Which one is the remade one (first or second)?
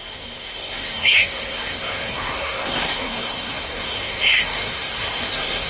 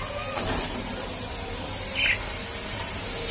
first